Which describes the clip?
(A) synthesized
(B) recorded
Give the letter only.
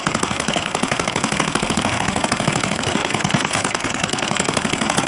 A